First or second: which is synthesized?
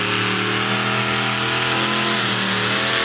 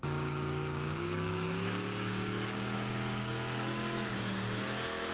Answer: second